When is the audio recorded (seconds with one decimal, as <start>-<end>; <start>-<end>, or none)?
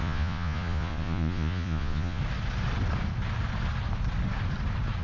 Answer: 2.2-5.0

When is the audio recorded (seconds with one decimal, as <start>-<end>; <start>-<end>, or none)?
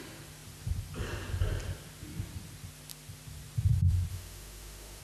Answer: 0.0-4.1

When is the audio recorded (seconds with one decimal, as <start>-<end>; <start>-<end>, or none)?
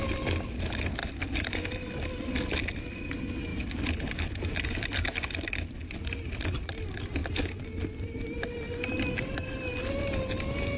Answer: 0.0-1.0; 2.1-10.8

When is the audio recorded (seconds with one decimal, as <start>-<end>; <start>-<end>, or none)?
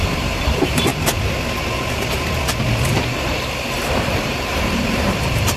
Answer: 0.9-2.9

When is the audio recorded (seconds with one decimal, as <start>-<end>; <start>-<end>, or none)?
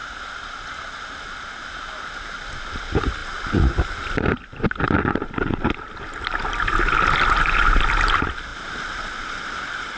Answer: 0.0-8.5; 9.1-10.0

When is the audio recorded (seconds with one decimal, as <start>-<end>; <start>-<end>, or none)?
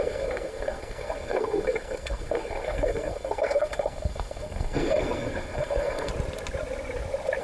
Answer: 6.1-7.4